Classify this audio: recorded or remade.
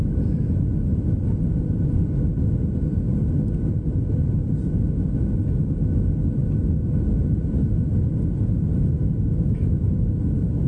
recorded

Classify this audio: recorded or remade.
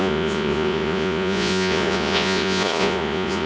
remade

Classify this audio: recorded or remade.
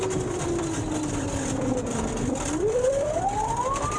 remade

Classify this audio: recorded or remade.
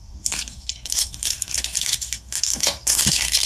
remade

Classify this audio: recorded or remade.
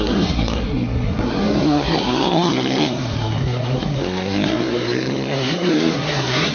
remade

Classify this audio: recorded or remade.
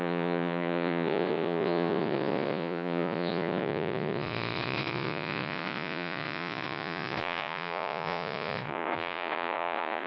remade